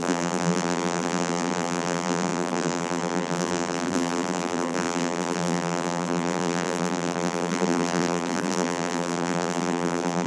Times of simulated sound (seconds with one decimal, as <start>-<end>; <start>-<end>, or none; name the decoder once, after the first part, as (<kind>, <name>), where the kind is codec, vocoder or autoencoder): 0.0-10.3 (vocoder, BigVGAN v2)